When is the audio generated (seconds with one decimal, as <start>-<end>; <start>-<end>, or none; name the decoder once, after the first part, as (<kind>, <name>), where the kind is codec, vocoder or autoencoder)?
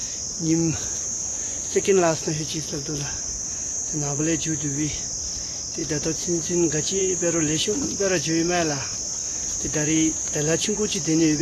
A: 0.0-4.2 (vocoder, Vocos)